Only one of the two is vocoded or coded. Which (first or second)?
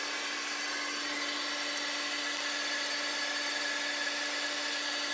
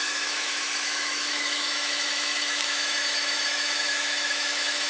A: second